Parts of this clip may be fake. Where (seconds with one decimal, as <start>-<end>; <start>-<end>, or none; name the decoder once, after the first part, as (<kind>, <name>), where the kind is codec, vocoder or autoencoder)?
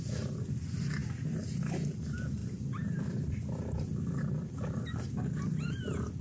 none